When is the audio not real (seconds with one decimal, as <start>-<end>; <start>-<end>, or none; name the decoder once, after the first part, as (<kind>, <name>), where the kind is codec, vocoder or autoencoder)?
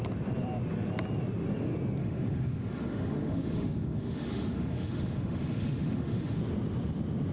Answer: 2.0-6.4 (autoencoder, DAC-VAE)